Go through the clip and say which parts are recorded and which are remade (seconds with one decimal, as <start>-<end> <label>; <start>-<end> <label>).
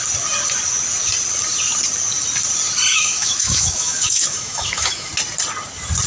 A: 0.0-2.9 recorded; 2.9-5.1 remade; 5.1-6.1 recorded